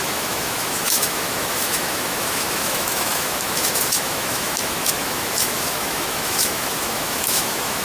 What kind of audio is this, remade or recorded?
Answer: remade